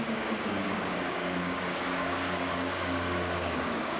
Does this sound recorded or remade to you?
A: remade